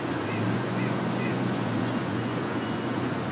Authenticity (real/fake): fake